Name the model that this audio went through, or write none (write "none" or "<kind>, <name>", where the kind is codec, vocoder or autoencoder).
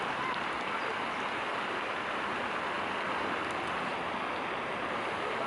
none